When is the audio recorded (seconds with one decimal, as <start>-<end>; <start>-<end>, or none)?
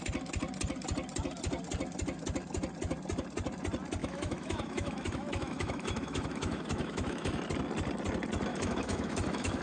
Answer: 0.0-4.0; 7.4-8.5